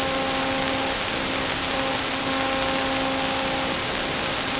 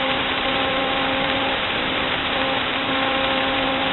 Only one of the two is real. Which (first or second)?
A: first